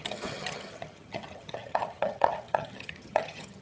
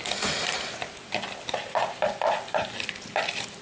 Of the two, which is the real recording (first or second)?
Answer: second